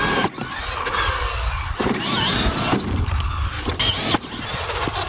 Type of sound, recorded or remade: recorded